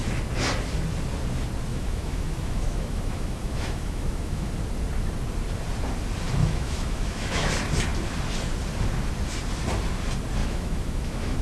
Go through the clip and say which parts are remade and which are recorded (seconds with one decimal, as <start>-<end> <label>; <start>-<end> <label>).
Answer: 0.0-1.7 recorded; 1.7-4.5 remade; 4.5-6.4 recorded; 6.4-7.5 remade; 7.5-10.4 recorded; 10.4-11.4 remade